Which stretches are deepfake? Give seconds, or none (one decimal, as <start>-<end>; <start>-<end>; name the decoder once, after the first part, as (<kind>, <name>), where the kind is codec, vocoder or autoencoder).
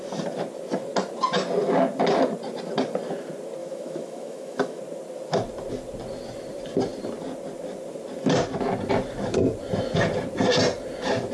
3.6-4.8 (autoencoder, DAC-VAE)